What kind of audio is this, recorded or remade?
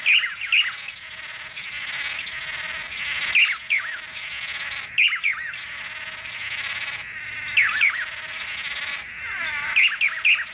recorded